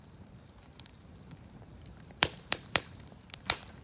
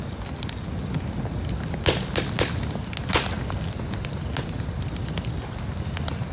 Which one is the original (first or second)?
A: second